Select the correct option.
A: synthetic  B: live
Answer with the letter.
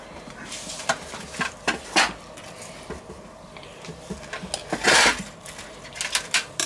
B